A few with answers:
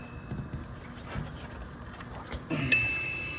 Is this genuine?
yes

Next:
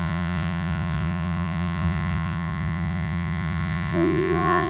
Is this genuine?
no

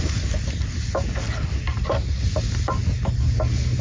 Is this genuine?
yes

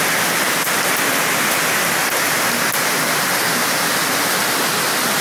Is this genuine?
yes